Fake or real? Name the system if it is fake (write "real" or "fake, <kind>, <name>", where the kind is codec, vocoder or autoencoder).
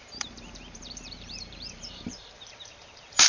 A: fake, vocoder, BigVGAN v2